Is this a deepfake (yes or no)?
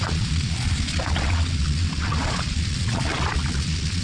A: yes